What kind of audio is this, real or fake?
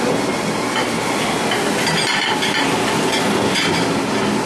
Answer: real